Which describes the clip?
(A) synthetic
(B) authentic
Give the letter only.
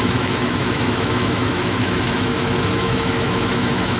A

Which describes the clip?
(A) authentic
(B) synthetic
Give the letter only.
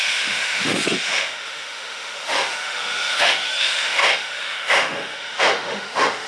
B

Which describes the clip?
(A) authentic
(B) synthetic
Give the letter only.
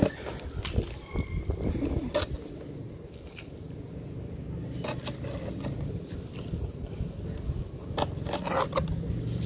A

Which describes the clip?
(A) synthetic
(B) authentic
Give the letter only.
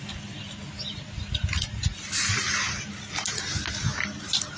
B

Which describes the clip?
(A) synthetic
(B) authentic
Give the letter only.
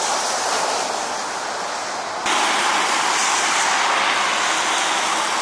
B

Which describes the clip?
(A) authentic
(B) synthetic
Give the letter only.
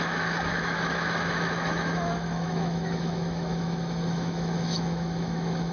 B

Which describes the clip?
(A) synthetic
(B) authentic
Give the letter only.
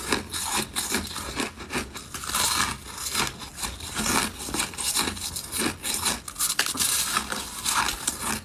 B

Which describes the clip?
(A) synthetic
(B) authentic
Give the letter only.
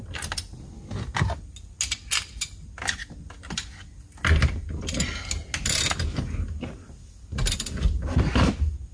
B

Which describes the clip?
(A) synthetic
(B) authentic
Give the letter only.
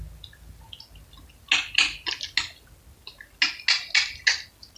B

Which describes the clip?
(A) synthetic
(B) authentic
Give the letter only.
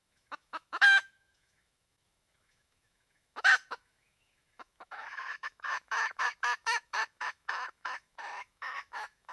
A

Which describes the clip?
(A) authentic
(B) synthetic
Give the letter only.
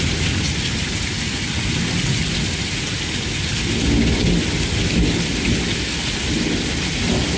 A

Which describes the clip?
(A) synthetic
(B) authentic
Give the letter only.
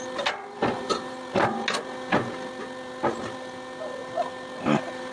B